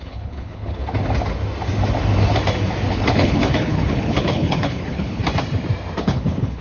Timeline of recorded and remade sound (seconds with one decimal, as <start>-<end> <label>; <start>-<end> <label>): 0.0-0.8 remade; 0.8-2.9 recorded; 2.9-5.2 remade; 5.2-6.0 recorded; 6.0-6.6 remade